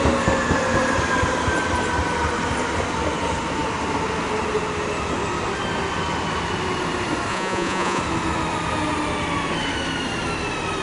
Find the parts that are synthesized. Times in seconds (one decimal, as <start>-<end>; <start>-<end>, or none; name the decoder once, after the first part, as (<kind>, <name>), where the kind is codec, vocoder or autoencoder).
7.3-8.0 (vocoder, Vocos)